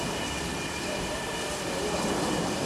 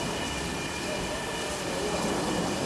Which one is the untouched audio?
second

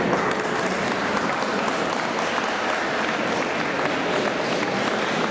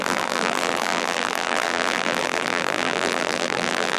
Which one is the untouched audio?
first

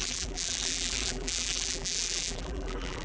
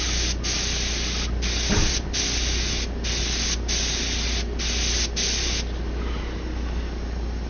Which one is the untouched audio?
second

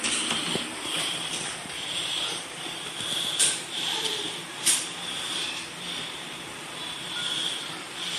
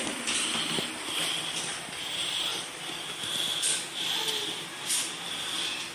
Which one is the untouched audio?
second